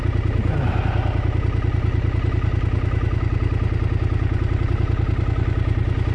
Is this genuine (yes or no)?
yes